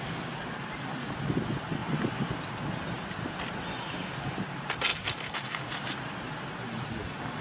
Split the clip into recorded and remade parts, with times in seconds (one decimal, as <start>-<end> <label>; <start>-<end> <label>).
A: 0.0-1.8 recorded; 1.8-2.5 remade; 2.5-7.4 recorded